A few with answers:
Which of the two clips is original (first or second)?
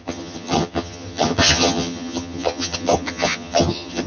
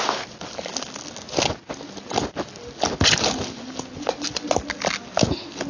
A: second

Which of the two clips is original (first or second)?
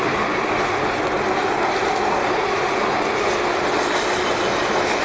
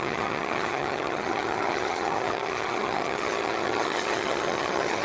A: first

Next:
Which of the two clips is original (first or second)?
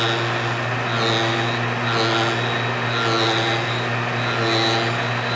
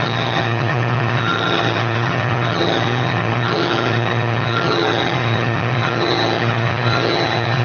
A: first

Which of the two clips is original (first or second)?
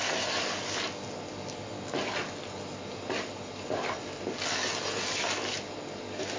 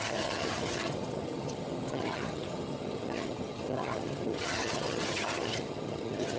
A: first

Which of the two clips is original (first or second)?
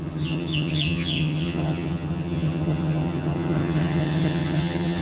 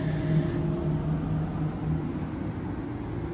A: second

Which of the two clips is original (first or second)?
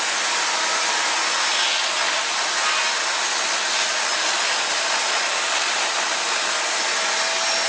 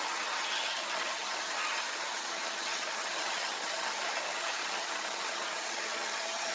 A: first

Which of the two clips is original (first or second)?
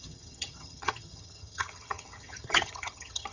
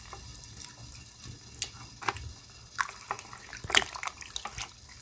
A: second